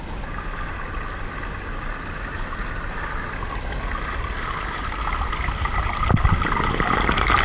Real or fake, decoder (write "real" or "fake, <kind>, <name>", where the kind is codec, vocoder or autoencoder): real